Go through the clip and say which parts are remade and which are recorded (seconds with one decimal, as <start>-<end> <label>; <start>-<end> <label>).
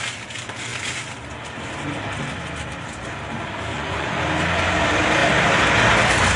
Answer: 0.0-3.7 recorded; 3.7-4.2 remade; 4.2-6.4 recorded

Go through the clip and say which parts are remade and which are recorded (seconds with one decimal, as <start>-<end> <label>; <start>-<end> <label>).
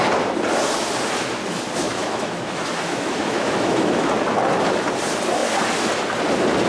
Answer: 0.0-2.0 recorded; 2.0-4.1 remade; 4.1-6.7 recorded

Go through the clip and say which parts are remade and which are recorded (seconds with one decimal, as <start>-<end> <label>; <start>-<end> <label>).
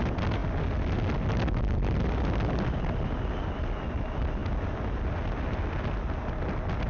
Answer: 0.0-6.9 recorded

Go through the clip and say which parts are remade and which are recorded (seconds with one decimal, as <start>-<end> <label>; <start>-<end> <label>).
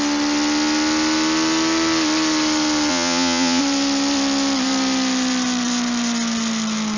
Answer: 0.0-2.9 recorded; 2.9-3.6 remade; 3.6-7.0 recorded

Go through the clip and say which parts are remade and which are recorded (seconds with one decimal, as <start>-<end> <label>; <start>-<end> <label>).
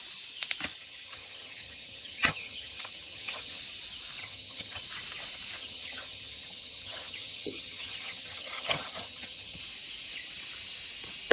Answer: 0.0-0.7 recorded; 0.7-3.6 remade; 3.6-4.2 recorded; 4.2-4.8 remade; 4.8-5.6 recorded; 5.6-9.6 remade; 9.6-11.3 recorded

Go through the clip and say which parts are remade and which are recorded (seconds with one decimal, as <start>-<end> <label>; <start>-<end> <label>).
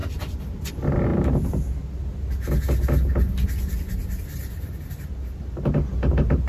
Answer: 0.0-6.5 recorded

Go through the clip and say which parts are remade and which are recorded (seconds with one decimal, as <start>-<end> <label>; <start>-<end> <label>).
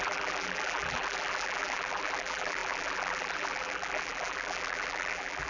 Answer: 0.0-5.5 remade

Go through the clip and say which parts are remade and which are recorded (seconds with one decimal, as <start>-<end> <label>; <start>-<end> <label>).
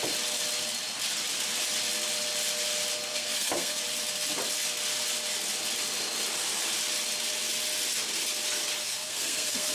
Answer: 0.0-3.1 recorded; 3.1-3.8 remade; 3.8-8.8 recorded; 8.8-9.7 remade